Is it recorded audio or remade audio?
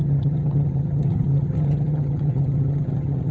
remade